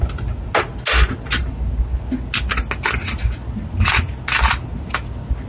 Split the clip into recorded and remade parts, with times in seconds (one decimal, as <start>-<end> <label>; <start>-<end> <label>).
0.0-5.5 recorded